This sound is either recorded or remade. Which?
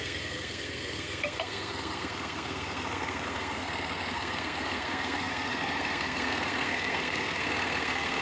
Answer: remade